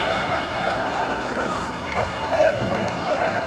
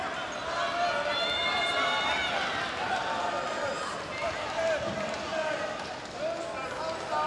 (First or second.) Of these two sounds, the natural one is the second